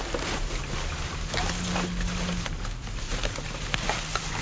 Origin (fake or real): real